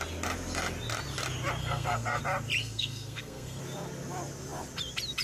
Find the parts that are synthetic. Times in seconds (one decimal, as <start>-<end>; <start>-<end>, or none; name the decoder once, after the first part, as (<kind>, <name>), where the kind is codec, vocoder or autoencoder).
1.6-2.2 (codec, SNAC); 2.6-3.6